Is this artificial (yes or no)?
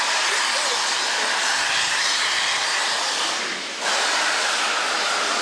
no